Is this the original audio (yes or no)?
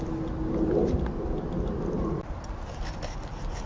yes